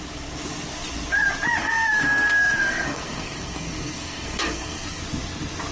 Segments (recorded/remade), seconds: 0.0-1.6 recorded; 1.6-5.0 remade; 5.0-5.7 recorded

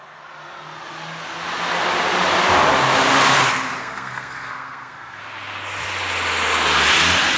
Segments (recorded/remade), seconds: 0.0-3.8 recorded; 3.8-5.2 remade; 5.2-7.4 recorded

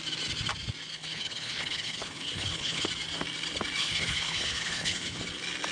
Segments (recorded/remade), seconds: 0.0-0.9 recorded; 0.9-2.9 remade; 2.9-3.8 recorded; 3.8-5.2 remade; 5.2-5.7 recorded